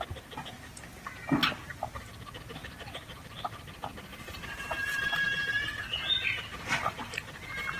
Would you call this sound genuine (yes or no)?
yes